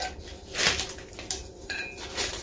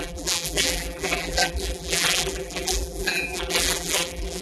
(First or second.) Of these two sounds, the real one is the first